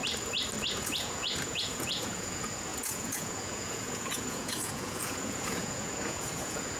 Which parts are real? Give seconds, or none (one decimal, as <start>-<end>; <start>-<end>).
0.0-0.6